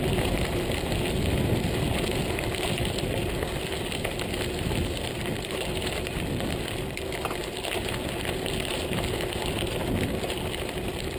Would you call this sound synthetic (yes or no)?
no